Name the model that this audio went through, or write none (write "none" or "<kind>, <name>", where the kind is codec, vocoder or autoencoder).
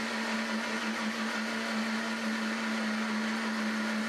none